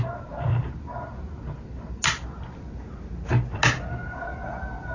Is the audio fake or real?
real